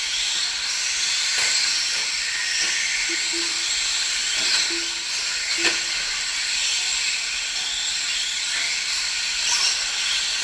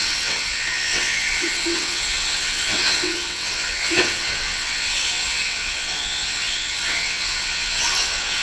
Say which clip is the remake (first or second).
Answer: second